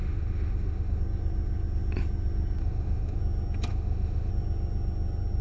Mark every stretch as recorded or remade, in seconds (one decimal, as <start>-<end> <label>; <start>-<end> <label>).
0.0-1.0 remade; 1.0-2.6 recorded; 2.6-3.2 remade; 3.2-3.7 recorded; 3.7-4.3 remade; 4.3-5.4 recorded